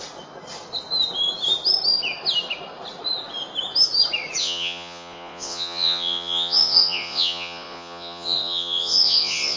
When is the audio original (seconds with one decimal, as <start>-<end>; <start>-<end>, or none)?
0.0-4.4